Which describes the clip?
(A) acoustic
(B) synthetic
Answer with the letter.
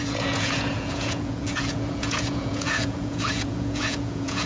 B